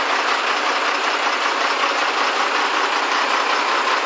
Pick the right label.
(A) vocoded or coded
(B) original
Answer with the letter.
B